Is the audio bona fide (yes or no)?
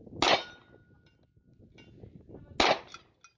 yes